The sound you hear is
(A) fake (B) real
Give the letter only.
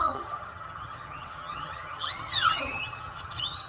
A